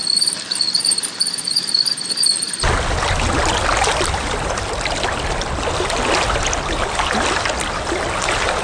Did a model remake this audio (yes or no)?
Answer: no